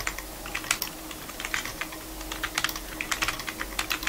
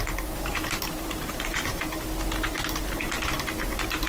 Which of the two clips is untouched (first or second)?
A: first